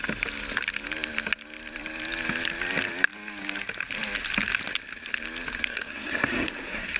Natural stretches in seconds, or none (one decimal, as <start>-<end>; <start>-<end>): 0.0-5.7